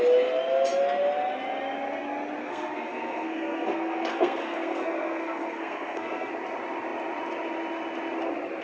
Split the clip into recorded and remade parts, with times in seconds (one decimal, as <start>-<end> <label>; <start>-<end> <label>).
0.0-2.4 recorded; 2.4-6.3 remade; 6.3-8.6 recorded